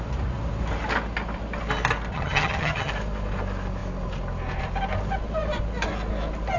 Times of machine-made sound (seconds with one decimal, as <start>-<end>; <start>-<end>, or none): 2.1-2.9